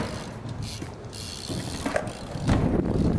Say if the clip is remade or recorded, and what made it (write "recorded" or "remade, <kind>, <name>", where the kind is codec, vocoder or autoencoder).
recorded